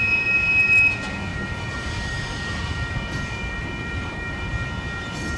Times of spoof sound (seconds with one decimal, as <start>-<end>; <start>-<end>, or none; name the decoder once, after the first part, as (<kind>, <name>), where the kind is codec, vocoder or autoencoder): 1.3-4.5 (vocoder, BigVGAN v2)